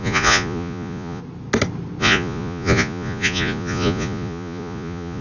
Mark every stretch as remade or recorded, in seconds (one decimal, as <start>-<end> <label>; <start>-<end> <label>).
0.0-1.2 remade; 1.2-2.0 recorded; 2.0-5.2 remade